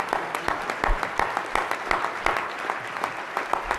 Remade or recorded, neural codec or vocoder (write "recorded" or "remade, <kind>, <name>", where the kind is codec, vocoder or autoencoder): recorded